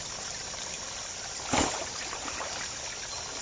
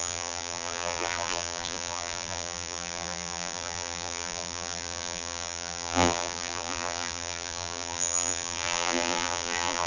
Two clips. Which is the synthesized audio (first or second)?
second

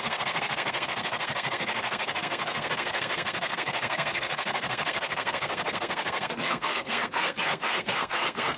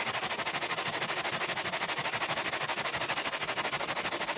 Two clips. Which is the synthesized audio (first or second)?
first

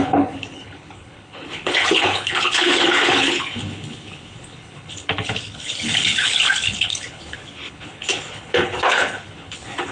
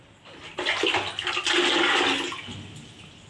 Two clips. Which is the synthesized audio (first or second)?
first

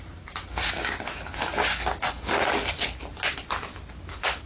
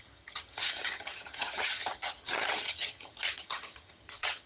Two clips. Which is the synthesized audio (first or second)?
second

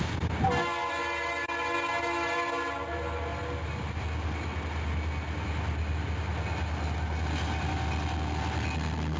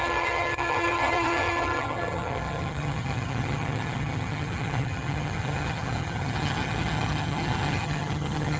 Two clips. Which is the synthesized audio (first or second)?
second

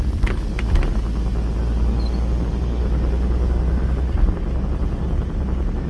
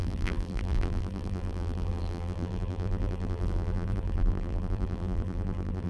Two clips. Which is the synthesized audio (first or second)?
second